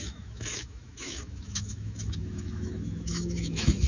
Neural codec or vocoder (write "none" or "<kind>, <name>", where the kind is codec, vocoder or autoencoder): autoencoder, DAC-VAE